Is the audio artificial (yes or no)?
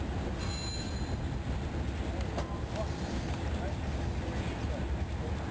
no